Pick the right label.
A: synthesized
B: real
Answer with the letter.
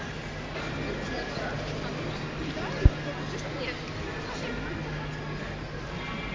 B